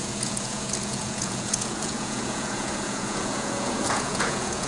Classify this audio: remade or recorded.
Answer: remade